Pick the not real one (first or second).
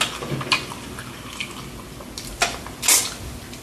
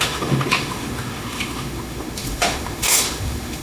second